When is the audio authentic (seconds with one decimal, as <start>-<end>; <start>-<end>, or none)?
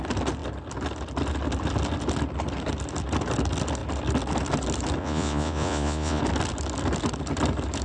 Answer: 0.0-5.0; 6.2-7.8